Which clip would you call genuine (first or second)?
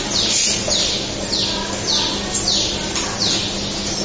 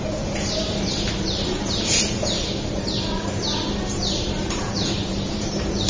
first